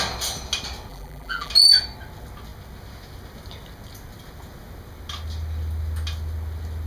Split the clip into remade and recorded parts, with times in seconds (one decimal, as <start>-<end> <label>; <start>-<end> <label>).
0.0-0.9 recorded; 0.9-1.5 remade; 1.5-6.9 recorded